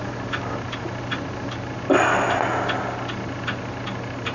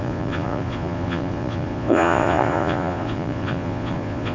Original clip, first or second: first